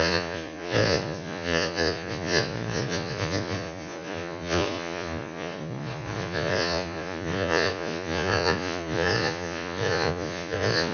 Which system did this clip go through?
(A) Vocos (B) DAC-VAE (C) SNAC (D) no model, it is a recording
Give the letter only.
A